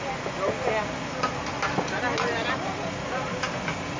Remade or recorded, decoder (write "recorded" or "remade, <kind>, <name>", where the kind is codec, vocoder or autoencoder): recorded